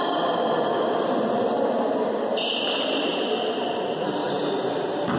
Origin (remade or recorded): recorded